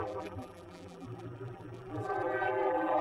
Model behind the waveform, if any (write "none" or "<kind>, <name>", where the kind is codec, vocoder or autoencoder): vocoder, BigVGAN v2